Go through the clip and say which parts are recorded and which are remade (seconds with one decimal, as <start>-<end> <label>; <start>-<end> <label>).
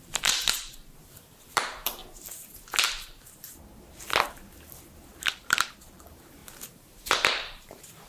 0.0-2.0 remade; 2.0-5.2 recorded; 5.2-8.1 remade